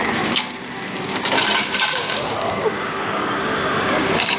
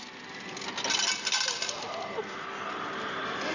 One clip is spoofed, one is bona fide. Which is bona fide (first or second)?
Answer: second